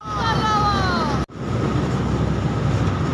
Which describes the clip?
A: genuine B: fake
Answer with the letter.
A